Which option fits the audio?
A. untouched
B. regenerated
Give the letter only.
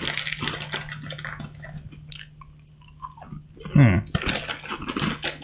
A